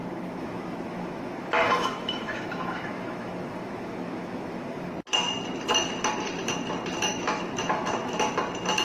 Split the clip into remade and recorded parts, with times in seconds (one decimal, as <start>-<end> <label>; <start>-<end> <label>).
0.0-4.9 remade; 4.9-7.1 recorded; 7.1-8.3 remade; 8.3-8.8 recorded